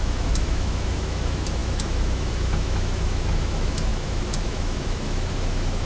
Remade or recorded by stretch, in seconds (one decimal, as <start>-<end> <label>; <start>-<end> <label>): 0.0-5.9 remade